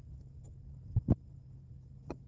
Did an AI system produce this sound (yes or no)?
no